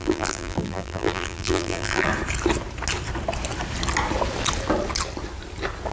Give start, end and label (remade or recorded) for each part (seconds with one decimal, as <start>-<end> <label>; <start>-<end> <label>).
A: 0.0-2.1 remade; 2.1-5.9 recorded